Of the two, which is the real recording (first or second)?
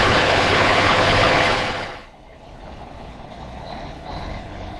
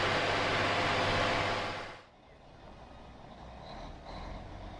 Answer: second